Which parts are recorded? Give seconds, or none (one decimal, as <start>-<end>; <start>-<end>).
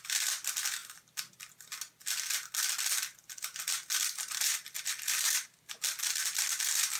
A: 0.0-7.0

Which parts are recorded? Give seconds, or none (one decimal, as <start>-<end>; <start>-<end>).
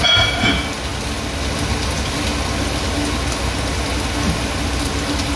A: 0.0-5.4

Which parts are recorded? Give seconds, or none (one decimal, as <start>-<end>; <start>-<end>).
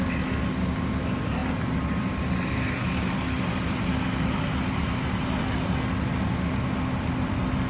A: 0.0-7.7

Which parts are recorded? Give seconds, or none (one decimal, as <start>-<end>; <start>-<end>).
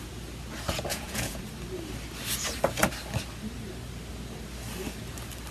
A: 0.0-0.9; 1.4-5.5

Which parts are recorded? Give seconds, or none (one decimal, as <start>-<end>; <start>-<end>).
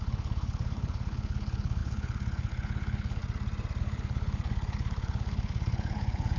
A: 3.2-3.8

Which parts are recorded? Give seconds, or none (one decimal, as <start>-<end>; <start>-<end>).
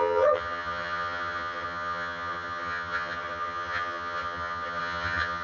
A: none